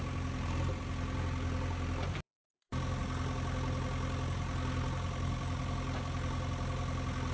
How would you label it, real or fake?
real